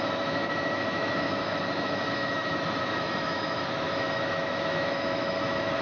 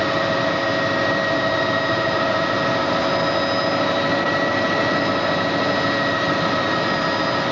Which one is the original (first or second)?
second